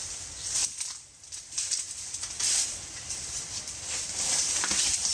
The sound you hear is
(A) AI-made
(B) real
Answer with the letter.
A